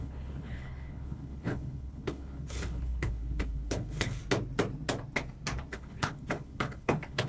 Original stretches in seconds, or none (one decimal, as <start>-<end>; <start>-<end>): 4.2-5.7